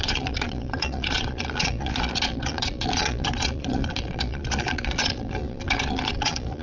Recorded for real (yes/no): no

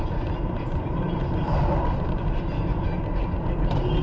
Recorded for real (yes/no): yes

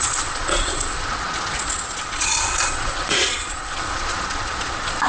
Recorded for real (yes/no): no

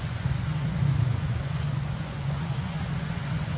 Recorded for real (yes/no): no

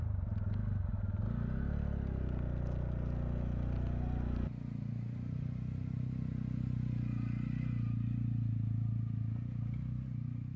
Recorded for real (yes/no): yes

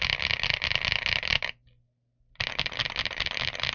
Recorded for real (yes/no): yes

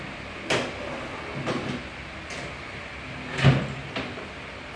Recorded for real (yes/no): yes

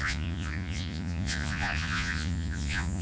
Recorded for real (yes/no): no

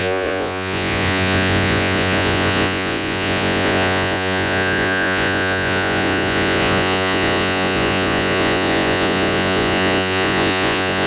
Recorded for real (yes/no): no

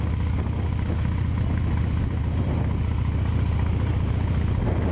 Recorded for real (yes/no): yes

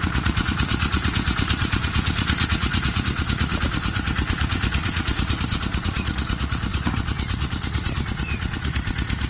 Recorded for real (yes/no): no